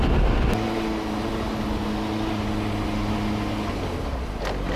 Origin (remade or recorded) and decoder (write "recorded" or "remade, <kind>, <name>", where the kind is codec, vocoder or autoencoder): recorded